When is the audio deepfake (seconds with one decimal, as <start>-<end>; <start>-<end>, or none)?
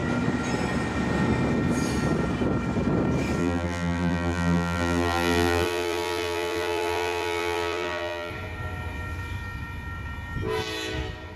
3.4-8.3